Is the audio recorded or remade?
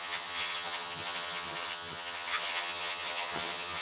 remade